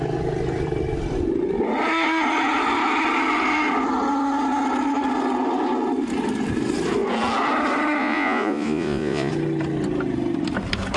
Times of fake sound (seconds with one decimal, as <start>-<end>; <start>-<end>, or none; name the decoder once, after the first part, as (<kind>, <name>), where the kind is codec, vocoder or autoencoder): 8.0-9.3 (vocoder, Vocos)